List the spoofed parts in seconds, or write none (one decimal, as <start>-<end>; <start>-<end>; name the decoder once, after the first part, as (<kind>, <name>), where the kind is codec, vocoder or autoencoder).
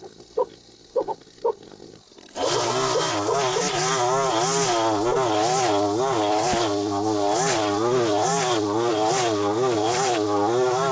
none